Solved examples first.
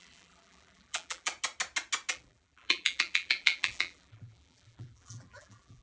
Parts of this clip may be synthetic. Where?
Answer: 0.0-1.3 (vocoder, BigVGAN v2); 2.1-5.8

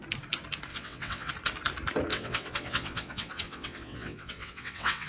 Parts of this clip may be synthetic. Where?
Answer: 0.7-1.3 (vocoder, WaveNeXt); 2.1-5.1

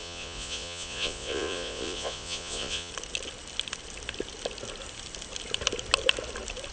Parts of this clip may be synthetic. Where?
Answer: 0.0-2.9 (vocoder, Vocos)

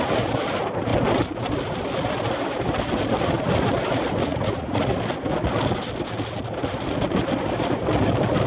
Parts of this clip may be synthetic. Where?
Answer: 4.2-5.0 (vocoder, Vocos)